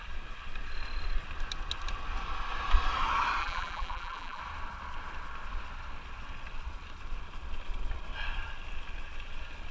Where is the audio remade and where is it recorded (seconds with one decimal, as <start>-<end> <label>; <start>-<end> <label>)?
0.0-3.4 recorded; 3.4-4.4 remade; 4.4-9.7 recorded